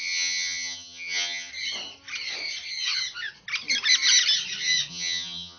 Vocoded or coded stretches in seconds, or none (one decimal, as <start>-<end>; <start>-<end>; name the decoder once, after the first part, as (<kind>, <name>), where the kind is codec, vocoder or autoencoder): 0.0-1.5 (vocoder, HiFi-GAN); 4.9-5.6